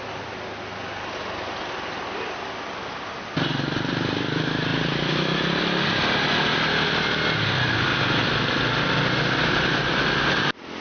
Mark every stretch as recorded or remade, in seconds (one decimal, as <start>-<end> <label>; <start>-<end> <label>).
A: 0.0-10.8 recorded